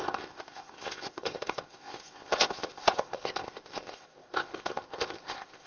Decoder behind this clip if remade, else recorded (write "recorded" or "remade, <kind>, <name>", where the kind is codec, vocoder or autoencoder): remade, codec, ZipCodec